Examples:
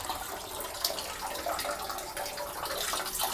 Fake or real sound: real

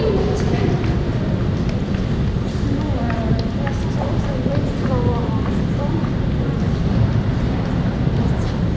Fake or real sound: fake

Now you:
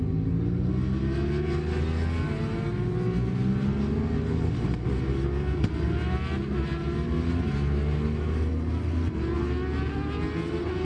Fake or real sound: real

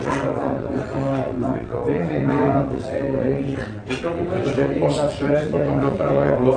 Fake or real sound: fake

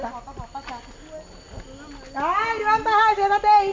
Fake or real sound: real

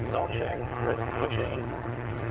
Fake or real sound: fake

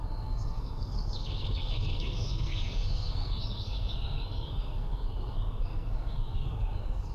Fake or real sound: fake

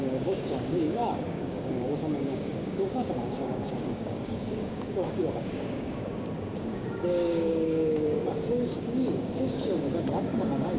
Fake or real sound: fake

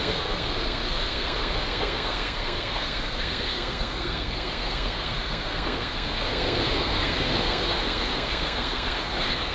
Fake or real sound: fake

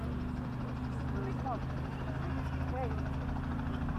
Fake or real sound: real